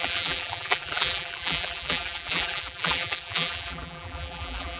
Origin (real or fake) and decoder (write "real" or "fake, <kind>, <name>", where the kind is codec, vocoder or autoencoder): fake, vocoder, BigVGAN v2